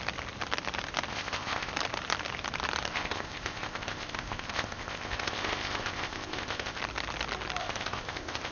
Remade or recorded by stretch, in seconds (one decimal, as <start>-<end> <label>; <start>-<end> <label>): 0.0-1.1 recorded; 1.1-1.7 remade; 1.7-2.9 recorded; 2.9-6.8 remade; 6.8-7.6 recorded; 7.6-8.5 remade